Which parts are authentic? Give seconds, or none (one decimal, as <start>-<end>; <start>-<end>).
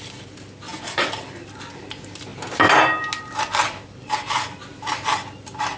0.0-5.8